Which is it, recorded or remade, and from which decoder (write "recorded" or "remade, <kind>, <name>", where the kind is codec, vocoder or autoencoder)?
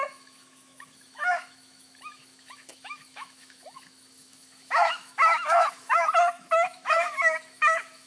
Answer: remade, autoencoder, DAC-VAE